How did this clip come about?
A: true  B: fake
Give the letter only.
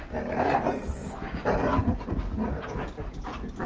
A